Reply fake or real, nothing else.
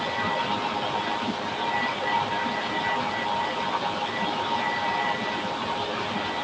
real